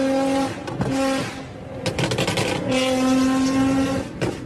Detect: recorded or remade recorded